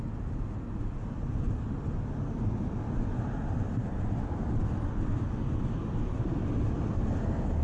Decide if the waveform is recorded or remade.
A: recorded